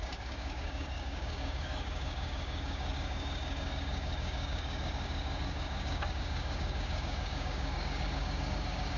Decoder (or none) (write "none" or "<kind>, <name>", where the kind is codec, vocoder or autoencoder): codec, DAC